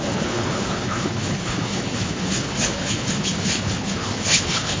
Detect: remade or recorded remade